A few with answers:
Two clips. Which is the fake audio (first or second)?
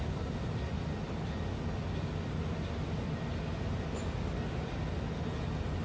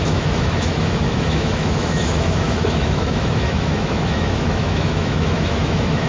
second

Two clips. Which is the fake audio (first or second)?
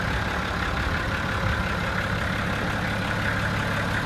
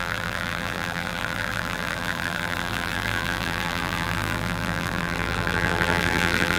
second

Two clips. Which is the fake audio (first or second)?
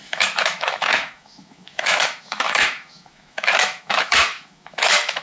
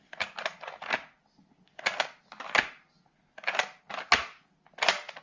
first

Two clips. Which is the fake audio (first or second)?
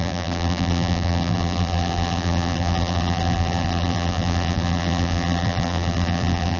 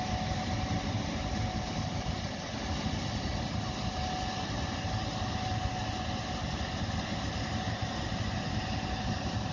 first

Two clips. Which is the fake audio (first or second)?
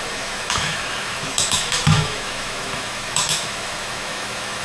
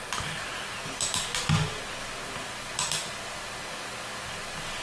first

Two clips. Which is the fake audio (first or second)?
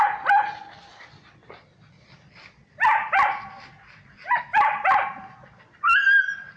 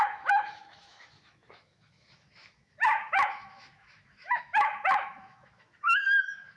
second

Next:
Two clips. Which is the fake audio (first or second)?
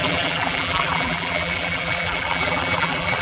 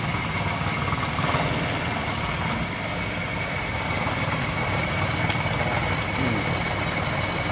first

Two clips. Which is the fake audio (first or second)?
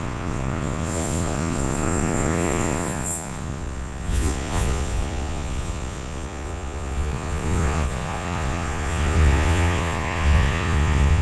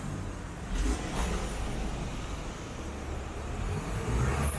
first